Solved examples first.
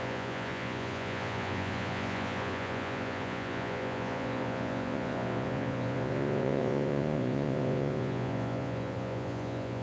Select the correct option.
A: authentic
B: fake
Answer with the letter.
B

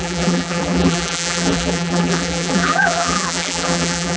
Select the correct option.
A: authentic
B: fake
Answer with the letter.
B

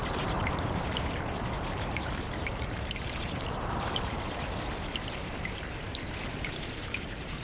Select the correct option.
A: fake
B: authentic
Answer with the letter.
A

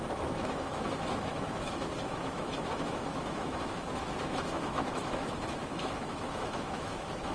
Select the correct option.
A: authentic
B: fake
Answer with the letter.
B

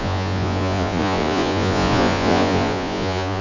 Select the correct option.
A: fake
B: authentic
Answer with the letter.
A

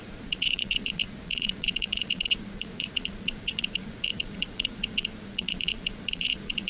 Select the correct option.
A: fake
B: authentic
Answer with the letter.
A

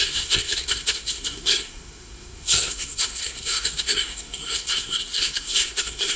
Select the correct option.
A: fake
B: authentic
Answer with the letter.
A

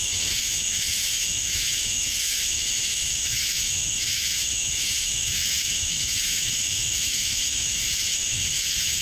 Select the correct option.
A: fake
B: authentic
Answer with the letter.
A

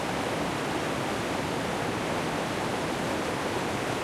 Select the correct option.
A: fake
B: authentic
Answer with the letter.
B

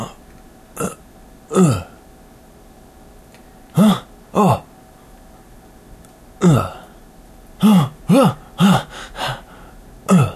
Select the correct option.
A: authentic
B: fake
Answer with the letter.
A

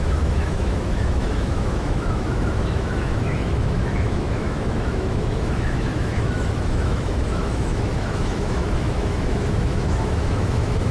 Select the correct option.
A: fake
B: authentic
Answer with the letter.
A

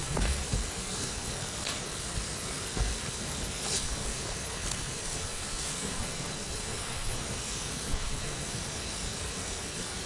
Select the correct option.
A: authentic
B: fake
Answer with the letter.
B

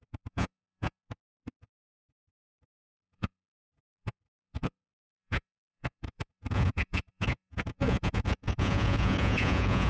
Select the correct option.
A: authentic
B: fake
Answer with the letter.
B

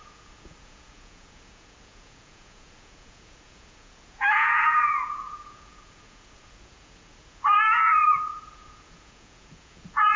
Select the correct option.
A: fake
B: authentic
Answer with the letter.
A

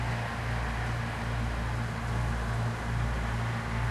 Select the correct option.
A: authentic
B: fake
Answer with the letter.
A